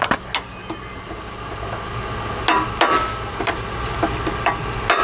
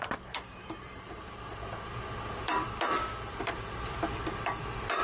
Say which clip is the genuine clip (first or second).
first